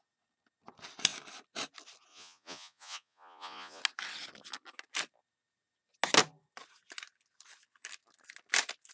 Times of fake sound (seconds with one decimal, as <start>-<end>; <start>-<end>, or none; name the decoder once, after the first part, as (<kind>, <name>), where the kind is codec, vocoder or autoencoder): 2.1-3.8 (vocoder, Vocos)